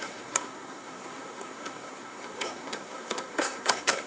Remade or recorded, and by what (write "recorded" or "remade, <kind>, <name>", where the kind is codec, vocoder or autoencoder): remade, codec, SNAC